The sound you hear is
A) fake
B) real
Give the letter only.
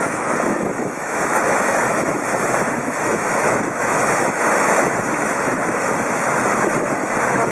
A